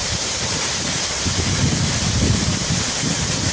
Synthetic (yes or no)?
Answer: yes